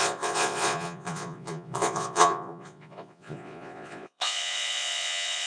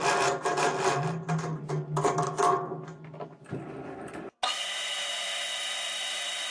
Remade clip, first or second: first